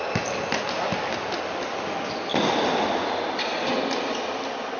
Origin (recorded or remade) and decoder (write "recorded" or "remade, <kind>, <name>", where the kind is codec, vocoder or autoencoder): recorded